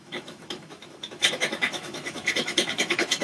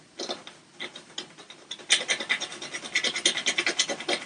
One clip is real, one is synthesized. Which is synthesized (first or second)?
first